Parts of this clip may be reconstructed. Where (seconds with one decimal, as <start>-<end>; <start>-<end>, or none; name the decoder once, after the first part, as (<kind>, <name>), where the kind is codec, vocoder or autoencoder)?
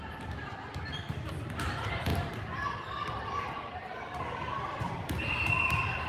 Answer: 0.0-6.1 (vocoder, BigVGAN v2)